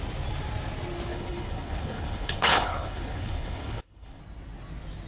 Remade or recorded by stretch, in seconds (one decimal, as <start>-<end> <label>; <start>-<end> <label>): 0.0-1.1 recorded; 1.1-4.2 remade; 4.2-5.1 recorded